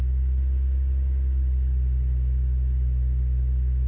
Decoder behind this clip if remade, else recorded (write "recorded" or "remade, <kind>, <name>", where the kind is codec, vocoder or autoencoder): recorded